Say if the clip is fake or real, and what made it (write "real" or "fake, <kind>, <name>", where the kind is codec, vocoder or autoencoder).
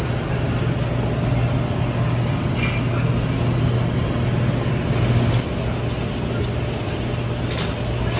real